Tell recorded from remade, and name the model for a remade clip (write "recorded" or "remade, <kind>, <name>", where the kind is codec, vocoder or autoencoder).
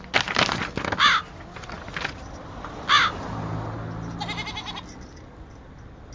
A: recorded